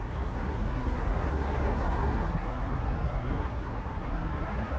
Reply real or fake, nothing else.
fake